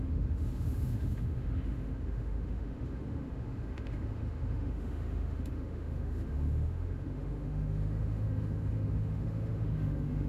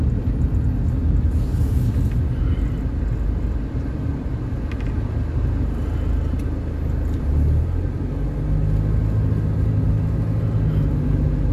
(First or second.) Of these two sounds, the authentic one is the second